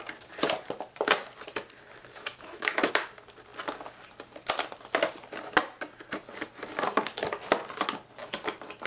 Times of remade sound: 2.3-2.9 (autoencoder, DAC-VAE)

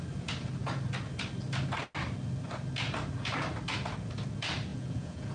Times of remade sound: 4.7-5.3 (vocoder, Vocos)

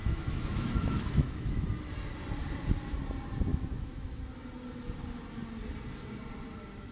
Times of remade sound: 0.0-1.7 (autoencoder, DAC-VAE); 3.5-4.2

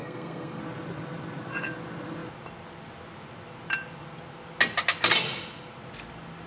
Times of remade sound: 0.0-0.6 (codec, SNAC)